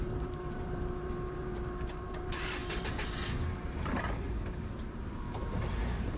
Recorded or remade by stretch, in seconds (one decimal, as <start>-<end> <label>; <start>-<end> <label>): 0.0-6.2 remade